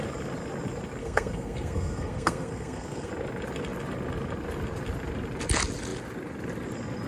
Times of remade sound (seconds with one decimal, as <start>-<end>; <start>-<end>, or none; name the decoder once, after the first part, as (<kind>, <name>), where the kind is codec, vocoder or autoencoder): 1.0-3.1 (codec, SNAC)